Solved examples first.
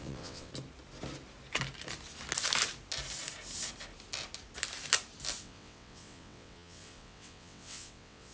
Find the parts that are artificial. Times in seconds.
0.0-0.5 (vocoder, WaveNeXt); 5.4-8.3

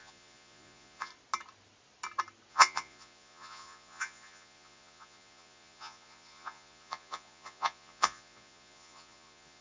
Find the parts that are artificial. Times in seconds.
0.0-1.1 (vocoder, Vocos); 2.5-9.6

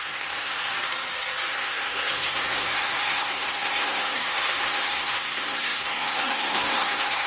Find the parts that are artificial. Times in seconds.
0.0-0.7 (codec, SNAC); 1.5-7.3

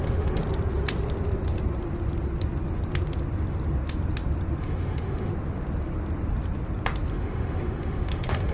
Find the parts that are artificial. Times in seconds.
0.0-0.4 (autoencoder, DAC-VAE); 4.6-5.3; 7.1-8.5

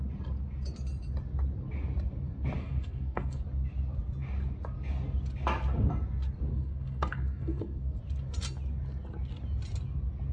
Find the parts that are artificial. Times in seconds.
2.6-3.4 (codec, SNAC); 6.5-8.0

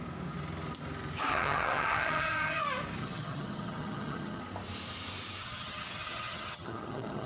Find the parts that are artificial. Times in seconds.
1.3-2.6 (vocoder, HiFi-GAN); 3.0-4.4; 5.4-7.3

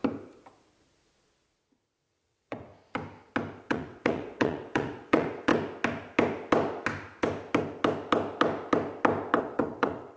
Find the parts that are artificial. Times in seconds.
2.0-2.7 (vocoder, WaveNeXt); 3.6-5.5; 9.4-10.2